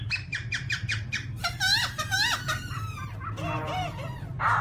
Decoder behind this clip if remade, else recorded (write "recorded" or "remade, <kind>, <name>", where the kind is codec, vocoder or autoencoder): recorded